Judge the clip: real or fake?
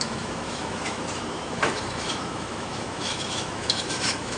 fake